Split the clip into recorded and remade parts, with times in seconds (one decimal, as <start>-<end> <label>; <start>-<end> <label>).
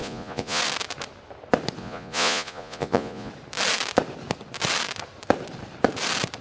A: 0.0-0.6 remade; 0.6-1.8 recorded; 1.8-3.3 remade; 3.3-6.4 recorded